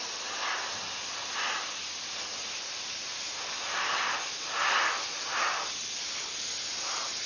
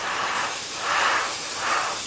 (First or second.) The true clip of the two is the first